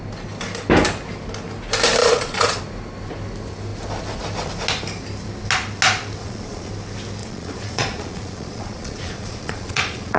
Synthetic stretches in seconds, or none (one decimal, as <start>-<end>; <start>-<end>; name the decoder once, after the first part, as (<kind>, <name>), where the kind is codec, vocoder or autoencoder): 2.0-2.6 (vocoder, Vocos); 6.2-6.7; 7.2-10.2